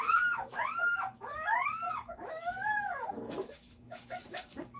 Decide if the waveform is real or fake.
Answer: fake